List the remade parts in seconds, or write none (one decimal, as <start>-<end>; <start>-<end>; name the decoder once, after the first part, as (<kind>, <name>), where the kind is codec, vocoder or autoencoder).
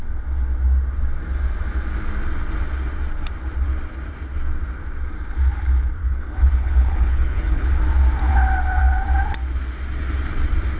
6.0-7.8 (codec, HILCodec)